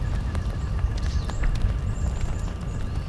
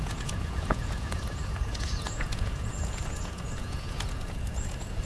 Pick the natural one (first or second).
first